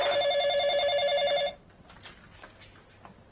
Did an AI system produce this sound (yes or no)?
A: no